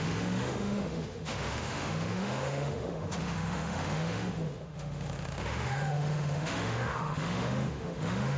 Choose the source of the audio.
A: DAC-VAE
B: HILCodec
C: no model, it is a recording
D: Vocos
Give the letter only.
A